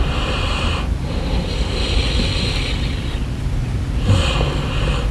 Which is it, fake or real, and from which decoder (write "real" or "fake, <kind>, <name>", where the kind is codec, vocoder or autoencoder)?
real